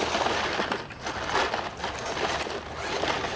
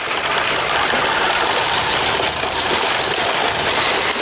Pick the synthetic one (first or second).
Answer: second